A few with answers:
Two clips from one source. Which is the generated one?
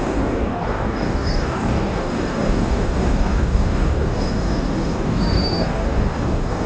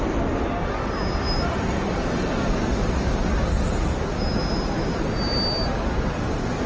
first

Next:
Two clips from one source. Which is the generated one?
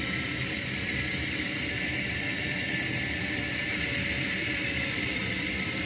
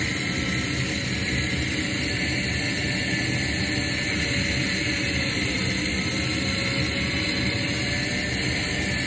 first